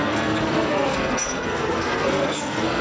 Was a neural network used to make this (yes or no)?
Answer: yes